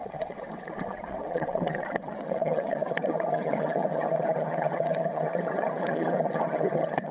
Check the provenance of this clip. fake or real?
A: fake